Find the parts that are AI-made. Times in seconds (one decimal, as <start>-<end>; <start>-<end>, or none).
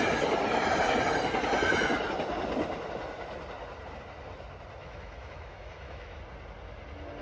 4.8-6.2